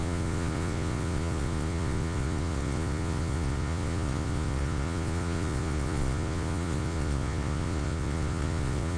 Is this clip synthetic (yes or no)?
yes